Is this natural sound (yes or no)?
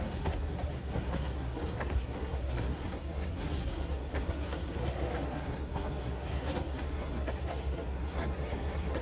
no